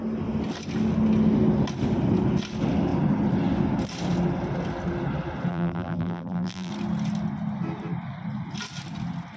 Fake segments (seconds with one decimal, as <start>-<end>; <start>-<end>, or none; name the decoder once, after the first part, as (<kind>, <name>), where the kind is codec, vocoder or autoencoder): 5.5-6.7 (vocoder, BigVGAN v2)